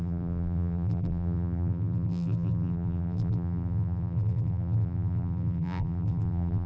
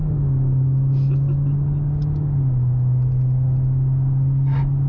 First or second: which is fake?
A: first